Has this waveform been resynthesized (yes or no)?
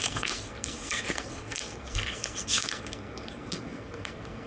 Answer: yes